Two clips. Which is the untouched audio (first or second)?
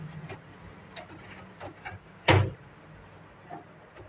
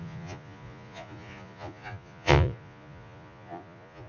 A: first